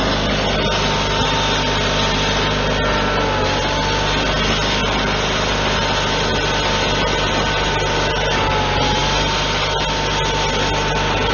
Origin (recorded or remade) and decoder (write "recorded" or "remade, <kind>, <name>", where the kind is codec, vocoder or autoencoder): recorded